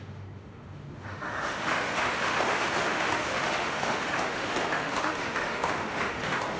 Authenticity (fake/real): fake